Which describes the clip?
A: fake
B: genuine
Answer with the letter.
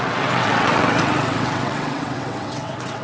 A